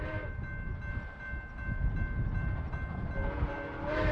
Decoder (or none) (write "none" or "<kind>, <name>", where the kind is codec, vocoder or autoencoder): none